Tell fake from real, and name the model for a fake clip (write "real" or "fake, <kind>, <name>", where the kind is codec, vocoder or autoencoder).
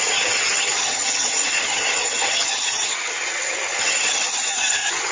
fake, vocoder, HiFi-GAN